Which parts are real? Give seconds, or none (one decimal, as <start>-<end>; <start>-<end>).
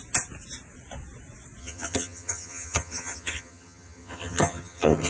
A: 0.0-1.6